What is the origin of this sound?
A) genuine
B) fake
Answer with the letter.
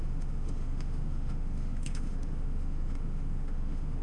B